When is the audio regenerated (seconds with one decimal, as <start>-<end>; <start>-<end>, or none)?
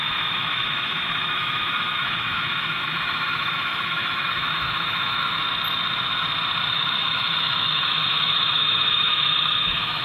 0.0-5.4; 6.7-10.0